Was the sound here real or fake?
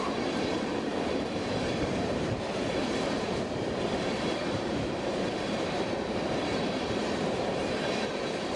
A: fake